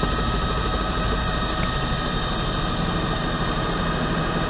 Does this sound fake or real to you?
real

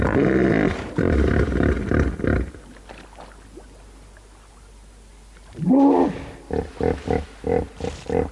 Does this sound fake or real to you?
real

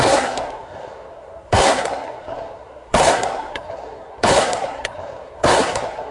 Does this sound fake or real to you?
fake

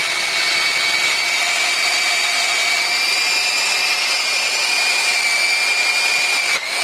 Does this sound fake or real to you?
real